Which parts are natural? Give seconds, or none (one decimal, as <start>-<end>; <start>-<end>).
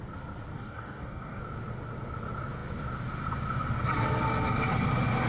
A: 0.0-0.5; 1.4-5.3